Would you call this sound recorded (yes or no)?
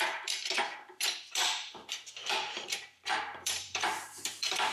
no